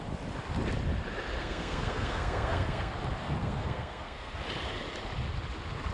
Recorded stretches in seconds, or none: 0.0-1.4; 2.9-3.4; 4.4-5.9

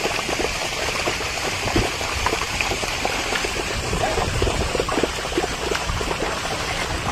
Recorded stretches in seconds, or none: 4.9-5.7